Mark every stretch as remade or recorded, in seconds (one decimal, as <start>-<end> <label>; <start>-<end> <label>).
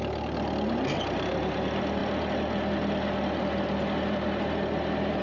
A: 0.0-5.2 recorded